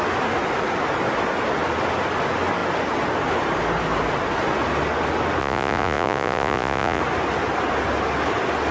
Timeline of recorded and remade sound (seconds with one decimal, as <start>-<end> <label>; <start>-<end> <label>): 0.0-5.4 recorded; 5.4-7.0 remade; 7.0-8.7 recorded